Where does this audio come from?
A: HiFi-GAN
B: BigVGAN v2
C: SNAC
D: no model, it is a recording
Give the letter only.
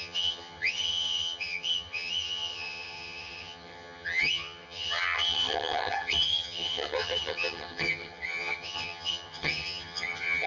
A